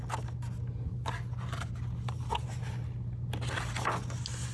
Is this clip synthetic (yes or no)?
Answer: no